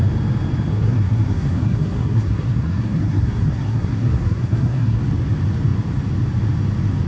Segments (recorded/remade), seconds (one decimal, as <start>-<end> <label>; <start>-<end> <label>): 0.0-0.7 recorded; 0.7-5.0 remade; 5.0-7.1 recorded